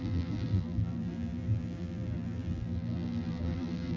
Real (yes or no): no